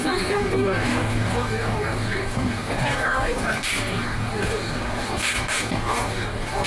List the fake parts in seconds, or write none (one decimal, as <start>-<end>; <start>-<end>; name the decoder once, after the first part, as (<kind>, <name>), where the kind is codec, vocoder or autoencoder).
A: 0.0-6.7 (codec, DAC)

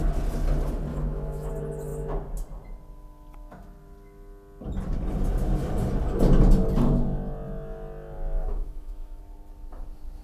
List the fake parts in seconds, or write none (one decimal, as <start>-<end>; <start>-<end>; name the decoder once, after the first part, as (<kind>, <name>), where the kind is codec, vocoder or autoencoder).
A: 0.9-1.5 (autoencoder, DAC-VAE); 8.4-9.2

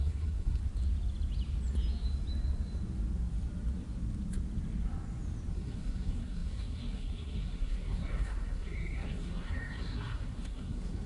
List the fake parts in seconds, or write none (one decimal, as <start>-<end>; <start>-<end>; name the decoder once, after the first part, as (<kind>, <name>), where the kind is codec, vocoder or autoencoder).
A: 0.0-0.6 (codec, SNAC); 5.5-11.1

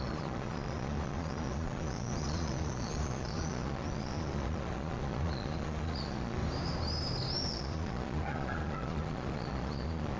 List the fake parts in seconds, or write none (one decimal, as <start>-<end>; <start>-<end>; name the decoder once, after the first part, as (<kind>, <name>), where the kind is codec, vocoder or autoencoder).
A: 0.0-6.4 (vocoder, Vocos); 7.5-10.2

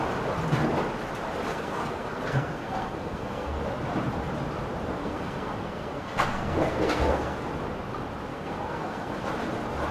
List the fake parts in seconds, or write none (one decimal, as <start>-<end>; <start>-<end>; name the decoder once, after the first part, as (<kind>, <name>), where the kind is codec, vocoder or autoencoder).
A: 1.5-3.6 (codec, SNAC); 4.9-7.5; 8.3-9.3

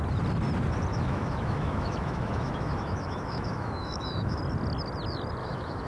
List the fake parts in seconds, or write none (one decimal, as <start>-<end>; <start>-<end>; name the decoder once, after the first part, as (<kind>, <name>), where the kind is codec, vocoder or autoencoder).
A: 0.9-4.4 (autoencoder, DAC-VAE); 5.4-5.9